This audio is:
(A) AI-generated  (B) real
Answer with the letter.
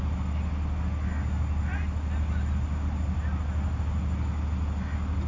B